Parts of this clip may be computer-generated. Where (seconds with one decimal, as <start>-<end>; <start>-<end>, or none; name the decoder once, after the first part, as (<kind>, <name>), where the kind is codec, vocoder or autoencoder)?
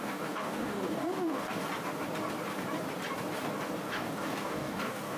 0.0-1.6 (codec, DAC); 3.9-5.2